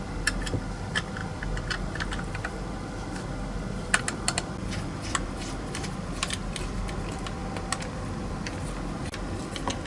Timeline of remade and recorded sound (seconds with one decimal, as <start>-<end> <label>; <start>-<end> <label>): 0.0-9.9 recorded